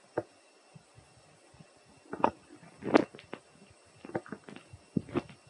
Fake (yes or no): no